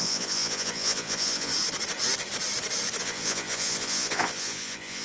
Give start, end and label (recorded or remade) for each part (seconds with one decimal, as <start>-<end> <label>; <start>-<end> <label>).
0.0-1.5 remade; 1.5-3.0 recorded; 3.0-5.0 remade